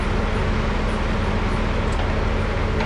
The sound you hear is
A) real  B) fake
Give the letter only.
A